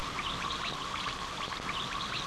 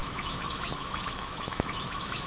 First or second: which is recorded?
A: first